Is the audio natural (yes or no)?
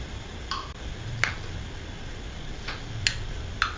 yes